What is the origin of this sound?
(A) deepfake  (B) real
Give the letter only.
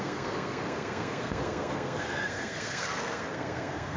A